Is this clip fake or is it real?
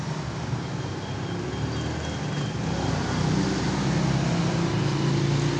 real